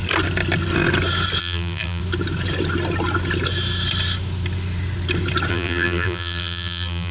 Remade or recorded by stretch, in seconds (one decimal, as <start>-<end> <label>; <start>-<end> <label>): 0.0-1.4 recorded; 1.4-2.0 remade; 2.0-5.5 recorded; 5.5-7.1 remade